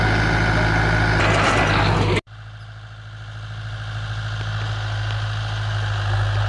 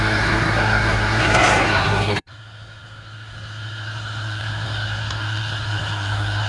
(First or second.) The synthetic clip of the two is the second